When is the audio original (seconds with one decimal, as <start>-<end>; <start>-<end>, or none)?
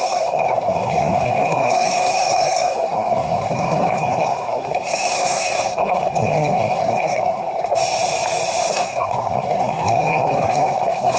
7.8-8.7